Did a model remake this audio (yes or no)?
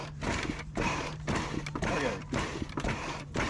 yes